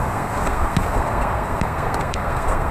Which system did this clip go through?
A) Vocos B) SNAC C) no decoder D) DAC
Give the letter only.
B